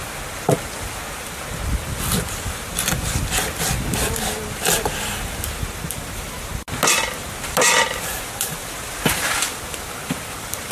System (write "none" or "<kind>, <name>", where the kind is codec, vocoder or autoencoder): none